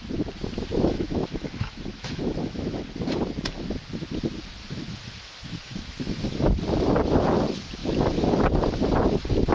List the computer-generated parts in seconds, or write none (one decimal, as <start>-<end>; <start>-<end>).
0.7-2.9; 4.6-6.4; 7.8-8.3